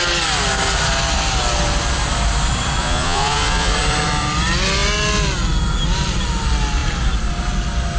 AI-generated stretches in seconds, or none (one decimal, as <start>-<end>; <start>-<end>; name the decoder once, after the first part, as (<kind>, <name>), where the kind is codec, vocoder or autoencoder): 2.8-3.7 (vocoder, Vocos)